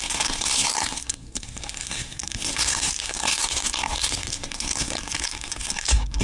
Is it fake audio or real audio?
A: fake